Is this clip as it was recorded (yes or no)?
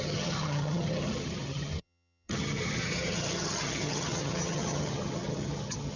no